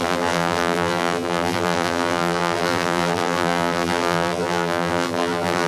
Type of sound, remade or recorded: remade